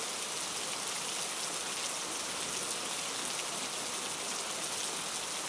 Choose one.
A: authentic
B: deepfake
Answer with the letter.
A